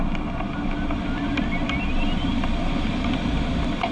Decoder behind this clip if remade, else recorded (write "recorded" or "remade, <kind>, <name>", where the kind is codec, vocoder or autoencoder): recorded